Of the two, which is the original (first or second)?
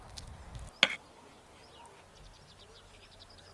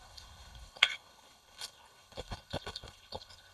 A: first